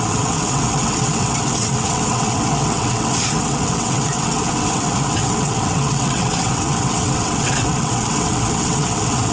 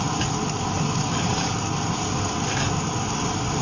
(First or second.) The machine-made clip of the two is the first